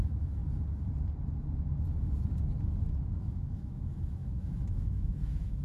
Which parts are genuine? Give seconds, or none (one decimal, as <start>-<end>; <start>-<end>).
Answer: 0.4-3.2

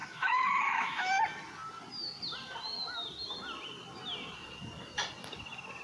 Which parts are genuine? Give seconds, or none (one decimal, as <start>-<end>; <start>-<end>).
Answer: 1.1-5.8

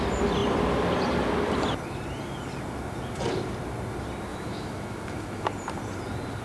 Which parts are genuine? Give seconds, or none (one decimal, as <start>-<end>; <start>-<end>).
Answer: 0.0-4.3; 5.5-6.4

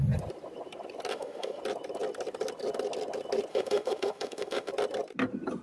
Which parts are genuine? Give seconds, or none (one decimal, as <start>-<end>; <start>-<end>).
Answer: 0.0-1.1; 1.6-3.5; 4.7-5.6

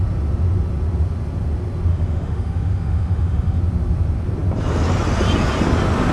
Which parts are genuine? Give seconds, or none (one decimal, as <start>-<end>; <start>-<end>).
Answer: 0.0-1.9; 3.6-6.1

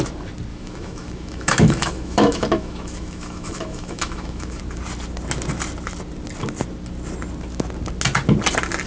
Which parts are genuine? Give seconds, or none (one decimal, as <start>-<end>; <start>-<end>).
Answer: 0.0-0.5; 4.6-8.9

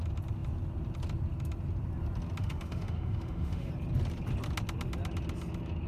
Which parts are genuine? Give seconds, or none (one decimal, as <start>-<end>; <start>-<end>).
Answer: 0.0-2.4; 3.7-5.9

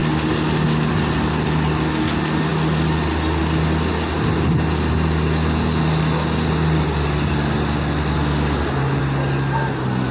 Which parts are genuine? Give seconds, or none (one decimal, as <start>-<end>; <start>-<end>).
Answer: 0.0-10.1